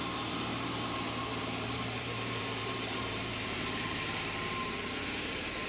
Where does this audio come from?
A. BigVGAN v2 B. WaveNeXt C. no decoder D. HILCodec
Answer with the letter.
A